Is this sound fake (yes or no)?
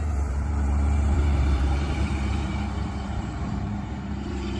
yes